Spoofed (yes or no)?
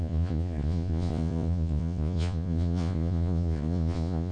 yes